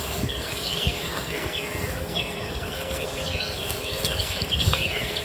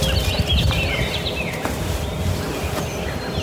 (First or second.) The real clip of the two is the second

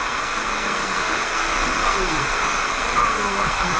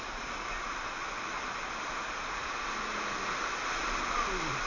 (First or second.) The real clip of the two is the second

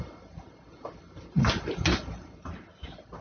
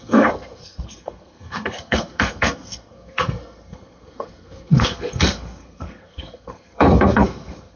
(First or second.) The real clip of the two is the first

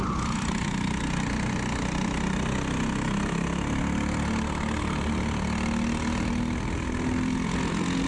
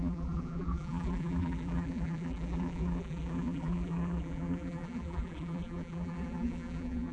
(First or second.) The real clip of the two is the first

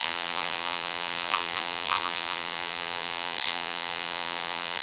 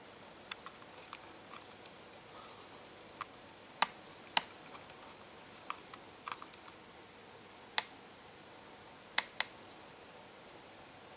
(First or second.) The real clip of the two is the second